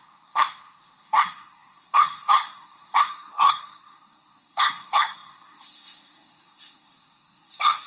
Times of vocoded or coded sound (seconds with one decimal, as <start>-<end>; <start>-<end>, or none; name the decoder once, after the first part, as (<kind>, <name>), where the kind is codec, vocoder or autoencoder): 0.0-7.9 (codec, SNAC)